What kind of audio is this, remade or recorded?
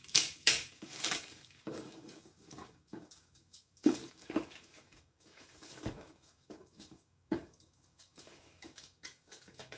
remade